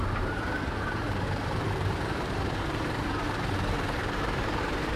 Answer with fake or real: fake